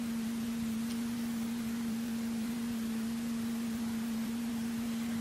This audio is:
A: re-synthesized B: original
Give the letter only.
A